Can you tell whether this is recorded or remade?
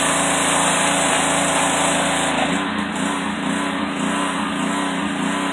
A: recorded